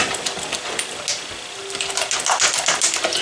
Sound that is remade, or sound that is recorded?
recorded